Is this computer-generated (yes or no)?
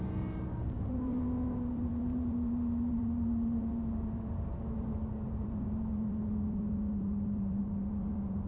yes